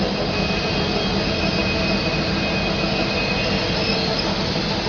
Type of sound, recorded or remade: recorded